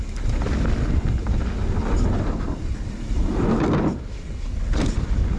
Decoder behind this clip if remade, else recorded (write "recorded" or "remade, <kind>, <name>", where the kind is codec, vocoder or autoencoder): recorded